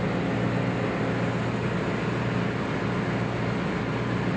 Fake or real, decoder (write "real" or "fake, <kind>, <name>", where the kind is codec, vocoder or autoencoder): real